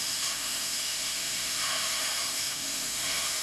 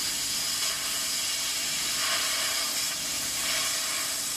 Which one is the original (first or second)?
second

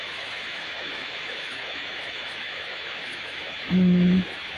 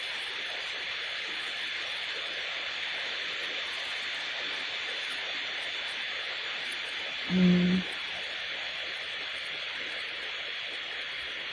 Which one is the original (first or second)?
second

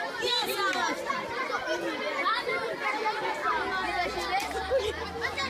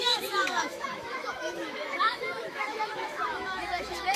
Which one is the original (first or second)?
first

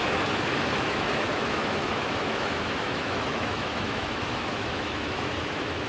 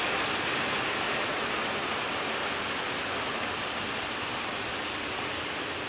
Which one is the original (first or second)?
second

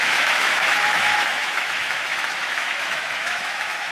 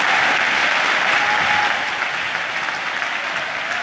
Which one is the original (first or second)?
second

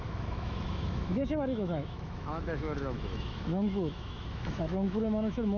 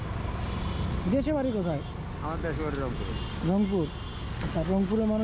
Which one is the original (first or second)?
second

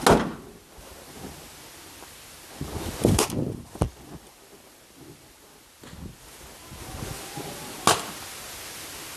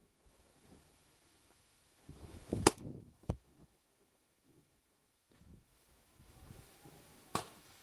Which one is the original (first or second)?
first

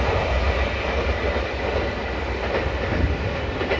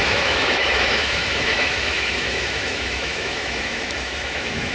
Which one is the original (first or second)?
first